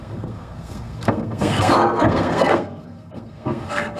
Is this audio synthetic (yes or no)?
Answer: yes